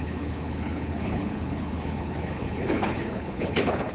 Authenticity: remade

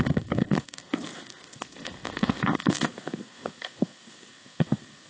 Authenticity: remade